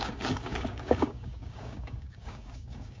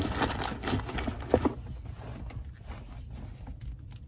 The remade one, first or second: first